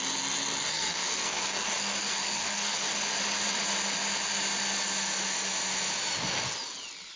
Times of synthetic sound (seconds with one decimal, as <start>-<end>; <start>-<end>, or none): 0.6-2.9